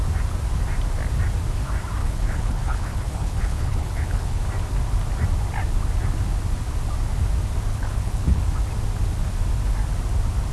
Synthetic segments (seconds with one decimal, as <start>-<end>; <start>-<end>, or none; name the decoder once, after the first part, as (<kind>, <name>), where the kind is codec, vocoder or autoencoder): 2.0-4.4 (codec, HILCodec); 7.7-8.4